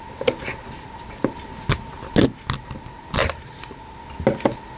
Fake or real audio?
real